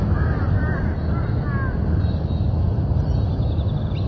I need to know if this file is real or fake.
real